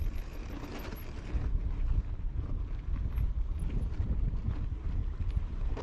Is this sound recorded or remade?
recorded